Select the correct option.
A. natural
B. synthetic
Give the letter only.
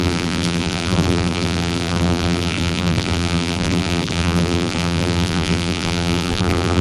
B